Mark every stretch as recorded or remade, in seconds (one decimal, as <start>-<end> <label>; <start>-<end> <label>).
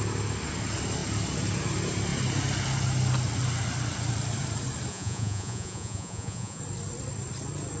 0.0-4.9 recorded; 4.9-6.6 remade; 6.6-7.8 recorded